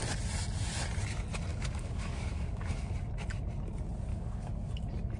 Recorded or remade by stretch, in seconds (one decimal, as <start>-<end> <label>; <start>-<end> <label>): 0.0-1.5 recorded; 1.5-2.9 remade; 2.9-4.1 recorded; 4.1-4.7 remade; 4.7-5.2 recorded